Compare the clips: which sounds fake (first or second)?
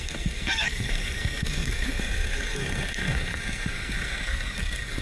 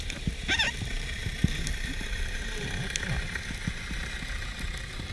first